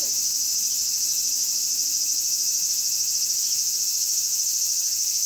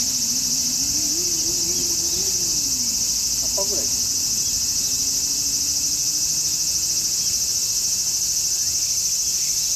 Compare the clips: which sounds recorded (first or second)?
second